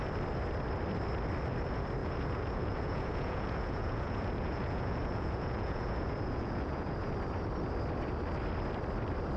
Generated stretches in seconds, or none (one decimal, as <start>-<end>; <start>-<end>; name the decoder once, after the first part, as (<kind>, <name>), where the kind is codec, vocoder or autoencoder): 2.0-7.1 (vocoder, Vocos)